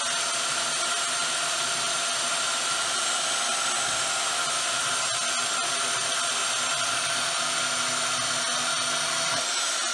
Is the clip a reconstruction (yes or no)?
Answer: no